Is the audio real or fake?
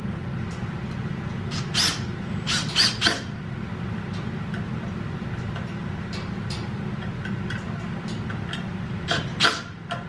real